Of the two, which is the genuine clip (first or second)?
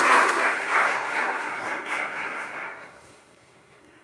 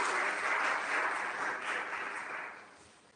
second